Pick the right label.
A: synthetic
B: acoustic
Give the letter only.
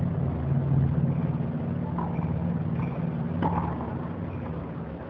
B